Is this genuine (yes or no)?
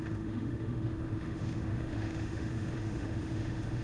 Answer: no